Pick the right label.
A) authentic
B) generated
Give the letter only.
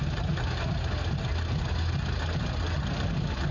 A